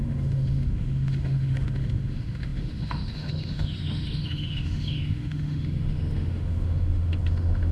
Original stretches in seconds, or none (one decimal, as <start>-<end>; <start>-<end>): none